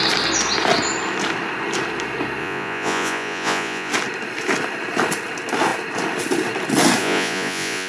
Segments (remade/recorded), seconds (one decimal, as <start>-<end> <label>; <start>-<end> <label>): 0.0-2.4 recorded; 2.4-3.9 remade; 3.9-7.0 recorded; 7.0-7.9 remade

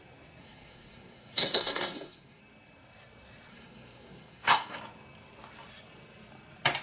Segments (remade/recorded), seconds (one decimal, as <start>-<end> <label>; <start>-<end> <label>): 0.0-0.4 recorded; 0.4-2.4 remade; 2.4-3.5 recorded; 3.5-4.8 remade; 4.8-6.8 recorded

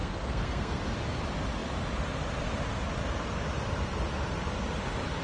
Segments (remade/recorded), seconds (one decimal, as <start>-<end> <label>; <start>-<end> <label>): 0.0-0.8 remade; 0.8-5.2 recorded

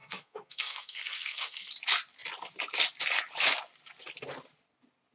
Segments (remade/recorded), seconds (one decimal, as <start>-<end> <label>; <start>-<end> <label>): 0.0-1.7 remade; 1.7-5.1 recorded

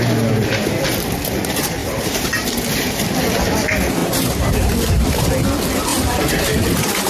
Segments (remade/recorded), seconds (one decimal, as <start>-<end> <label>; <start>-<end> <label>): 0.0-1.8 recorded; 1.8-2.9 remade; 2.9-4.0 recorded; 4.0-5.2 remade; 5.2-5.9 recorded; 5.9-6.4 remade; 6.4-7.1 recorded

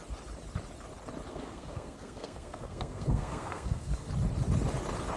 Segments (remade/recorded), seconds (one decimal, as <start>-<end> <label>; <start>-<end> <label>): 0.0-1.3 recorded; 1.3-4.1 remade; 4.1-5.2 recorded

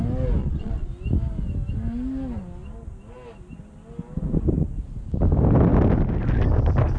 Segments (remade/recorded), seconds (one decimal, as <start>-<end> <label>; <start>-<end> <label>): 0.0-0.4 recorded; 0.4-0.9 remade; 0.9-7.0 recorded

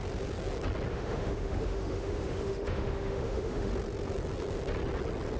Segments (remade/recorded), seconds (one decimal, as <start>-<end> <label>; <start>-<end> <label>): 0.0-0.9 recorded; 0.9-3.7 remade; 3.7-5.4 recorded